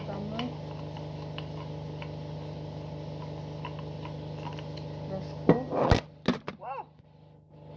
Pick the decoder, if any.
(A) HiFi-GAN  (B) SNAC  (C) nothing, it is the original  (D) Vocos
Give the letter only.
C